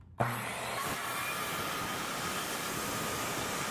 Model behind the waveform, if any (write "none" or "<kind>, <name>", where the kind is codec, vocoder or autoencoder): vocoder, BigVGAN v2